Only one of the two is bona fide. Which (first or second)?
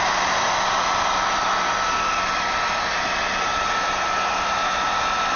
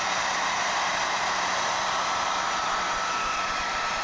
first